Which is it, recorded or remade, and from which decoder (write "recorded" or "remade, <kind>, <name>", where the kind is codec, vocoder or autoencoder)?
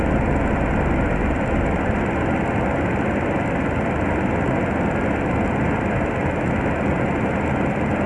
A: recorded